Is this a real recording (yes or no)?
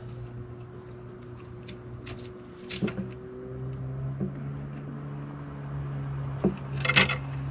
yes